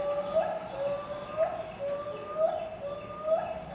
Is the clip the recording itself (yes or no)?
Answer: yes